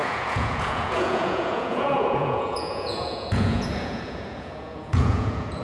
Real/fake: fake